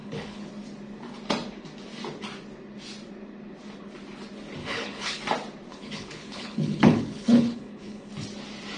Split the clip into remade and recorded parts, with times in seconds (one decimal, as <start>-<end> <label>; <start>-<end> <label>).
0.0-0.5 remade; 0.5-4.6 recorded; 4.6-5.2 remade; 5.2-5.7 recorded; 5.7-8.1 remade; 8.1-8.8 recorded